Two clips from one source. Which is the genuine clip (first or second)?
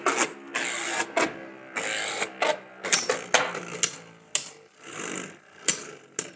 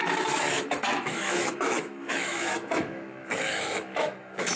first